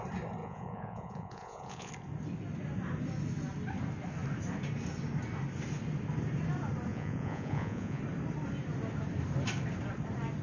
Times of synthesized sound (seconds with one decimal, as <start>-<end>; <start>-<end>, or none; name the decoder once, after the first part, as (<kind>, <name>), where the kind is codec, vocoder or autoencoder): 0.4-1.9 (vocoder, Vocos); 6.9-8.0